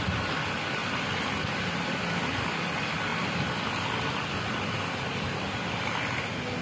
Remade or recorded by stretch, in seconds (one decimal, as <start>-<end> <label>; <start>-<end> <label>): 0.0-6.6 recorded

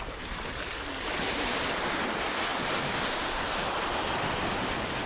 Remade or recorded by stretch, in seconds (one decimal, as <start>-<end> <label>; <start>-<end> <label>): 0.0-5.1 recorded

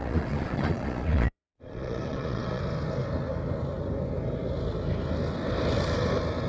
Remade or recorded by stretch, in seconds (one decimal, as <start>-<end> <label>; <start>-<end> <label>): 0.0-2.6 remade; 2.6-6.5 recorded

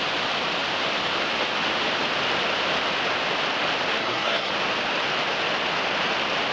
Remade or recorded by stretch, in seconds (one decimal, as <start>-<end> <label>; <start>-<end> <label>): 0.0-4.0 recorded; 4.0-4.5 remade; 4.5-6.5 recorded

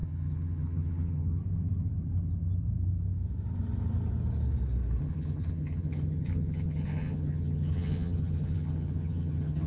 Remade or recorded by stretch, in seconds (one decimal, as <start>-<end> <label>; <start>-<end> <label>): 0.0-1.4 remade; 1.4-5.0 recorded; 5.0-9.7 remade